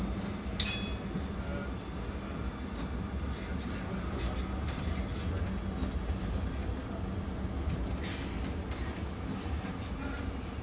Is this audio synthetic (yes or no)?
no